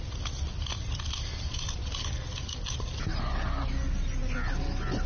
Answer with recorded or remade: recorded